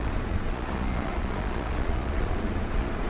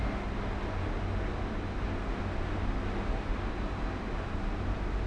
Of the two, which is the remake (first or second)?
first